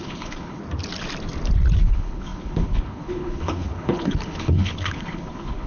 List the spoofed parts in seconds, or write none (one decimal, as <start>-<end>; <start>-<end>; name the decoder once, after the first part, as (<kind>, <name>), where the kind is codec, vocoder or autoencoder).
0.0-0.6 (codec, HILCodec); 1.8-5.7